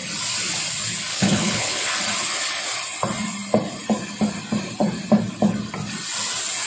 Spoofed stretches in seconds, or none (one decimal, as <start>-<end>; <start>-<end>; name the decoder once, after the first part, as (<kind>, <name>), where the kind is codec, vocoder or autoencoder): 1.1-1.9 (codec, HILCodec)